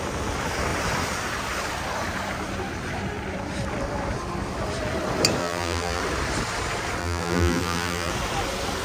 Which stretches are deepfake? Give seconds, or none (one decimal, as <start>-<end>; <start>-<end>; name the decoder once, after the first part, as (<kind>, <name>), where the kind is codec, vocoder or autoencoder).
5.4-6.0 (vocoder, BigVGAN v2); 7.0-8.1